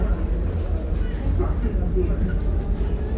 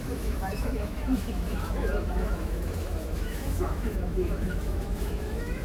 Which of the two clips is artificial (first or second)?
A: second